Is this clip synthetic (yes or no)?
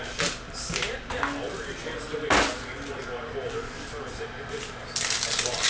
no